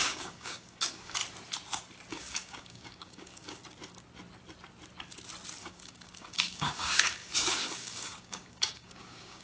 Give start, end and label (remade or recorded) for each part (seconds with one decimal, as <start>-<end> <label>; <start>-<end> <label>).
0.0-1.2 remade; 1.2-2.1 recorded; 2.1-3.6 remade; 3.6-5.6 recorded; 5.6-9.4 remade